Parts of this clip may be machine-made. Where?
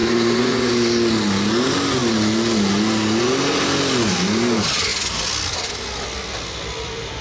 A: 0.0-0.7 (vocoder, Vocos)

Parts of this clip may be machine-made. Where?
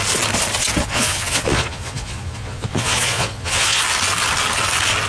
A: 0.8-3.8 (vocoder, Vocos)